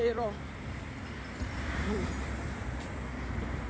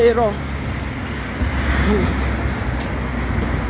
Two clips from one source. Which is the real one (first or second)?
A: second